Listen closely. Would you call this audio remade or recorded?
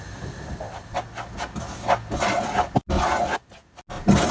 recorded